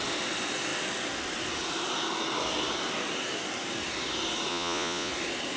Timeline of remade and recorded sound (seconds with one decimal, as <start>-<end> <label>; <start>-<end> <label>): 0.0-4.5 recorded; 4.5-5.1 remade; 5.1-5.6 recorded